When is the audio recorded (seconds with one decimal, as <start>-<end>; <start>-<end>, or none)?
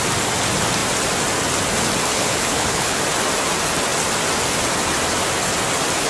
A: 0.0-2.1; 3.0-6.1